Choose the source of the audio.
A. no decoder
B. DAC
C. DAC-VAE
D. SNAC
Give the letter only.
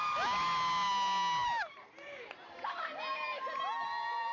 A